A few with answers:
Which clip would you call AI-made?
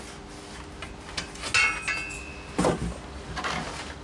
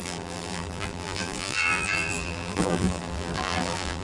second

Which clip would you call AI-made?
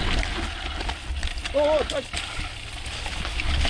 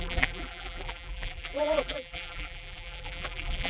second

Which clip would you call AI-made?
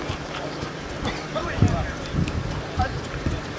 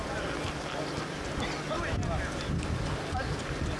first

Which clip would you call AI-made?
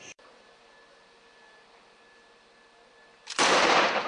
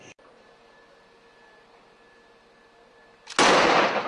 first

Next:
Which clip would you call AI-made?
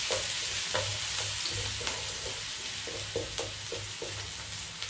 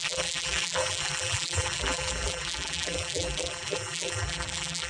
second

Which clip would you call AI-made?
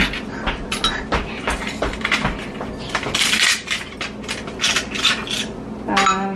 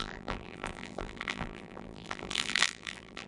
second